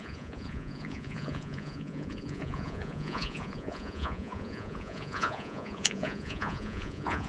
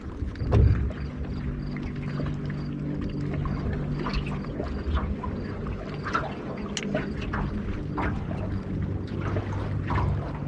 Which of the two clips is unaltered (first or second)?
second